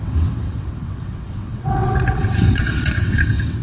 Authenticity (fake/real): fake